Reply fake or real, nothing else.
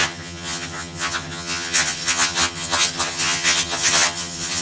fake